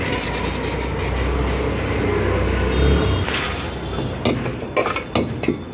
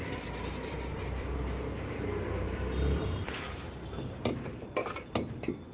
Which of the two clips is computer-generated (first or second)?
second